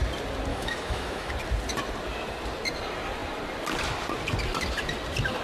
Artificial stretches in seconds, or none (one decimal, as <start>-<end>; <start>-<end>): 0.5-1.3